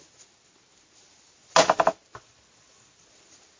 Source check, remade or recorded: recorded